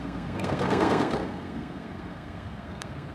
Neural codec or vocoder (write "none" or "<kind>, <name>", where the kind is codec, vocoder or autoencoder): codec, SNAC